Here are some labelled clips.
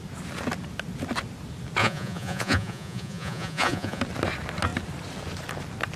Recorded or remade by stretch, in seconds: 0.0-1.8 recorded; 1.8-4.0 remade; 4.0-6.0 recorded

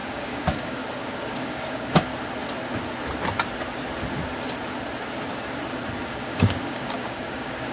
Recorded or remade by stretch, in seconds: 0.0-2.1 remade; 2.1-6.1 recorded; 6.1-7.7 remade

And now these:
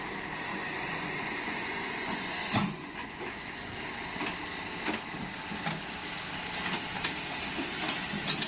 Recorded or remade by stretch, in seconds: 0.0-0.5 recorded; 0.5-3.7 remade; 3.7-8.5 recorded